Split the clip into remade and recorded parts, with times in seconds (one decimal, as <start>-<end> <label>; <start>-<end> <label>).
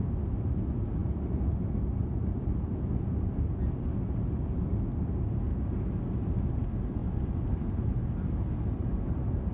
0.0-5.5 recorded; 5.5-6.0 remade; 6.0-9.5 recorded